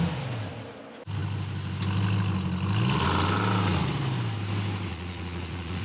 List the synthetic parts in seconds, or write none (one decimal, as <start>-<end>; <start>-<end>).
4.9-5.8